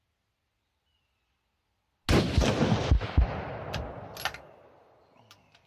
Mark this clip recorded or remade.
recorded